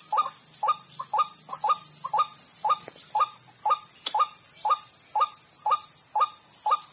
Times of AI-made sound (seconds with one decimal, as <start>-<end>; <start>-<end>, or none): none